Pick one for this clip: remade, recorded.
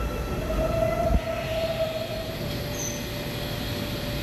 recorded